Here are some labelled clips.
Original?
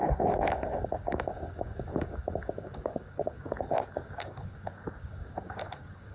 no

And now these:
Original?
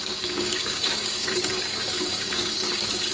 no